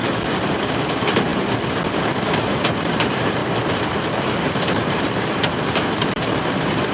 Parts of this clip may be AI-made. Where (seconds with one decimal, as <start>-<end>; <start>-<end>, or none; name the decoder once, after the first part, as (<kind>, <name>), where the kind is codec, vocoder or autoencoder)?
0.7-1.3 (vocoder, BigVGAN v2); 1.9-3.4; 4.5-6.9